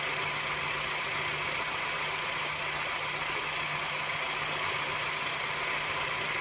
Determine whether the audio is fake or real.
real